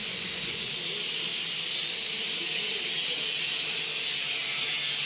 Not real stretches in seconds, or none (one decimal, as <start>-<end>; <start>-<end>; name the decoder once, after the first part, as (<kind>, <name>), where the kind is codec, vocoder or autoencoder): 0.0-0.7 (vocoder, Vocos)